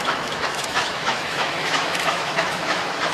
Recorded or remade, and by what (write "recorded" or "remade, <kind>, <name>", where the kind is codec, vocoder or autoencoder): remade, autoencoder, DAC-VAE